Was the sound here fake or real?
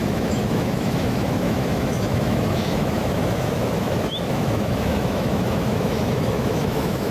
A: fake